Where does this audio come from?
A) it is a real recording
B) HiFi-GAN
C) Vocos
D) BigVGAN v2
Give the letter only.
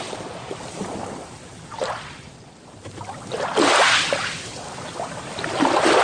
A